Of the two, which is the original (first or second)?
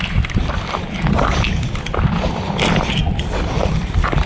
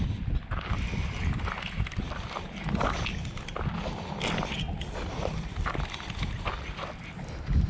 second